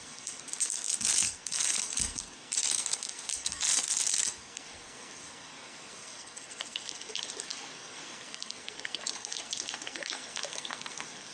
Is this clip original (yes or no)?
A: no